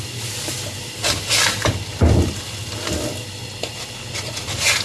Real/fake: real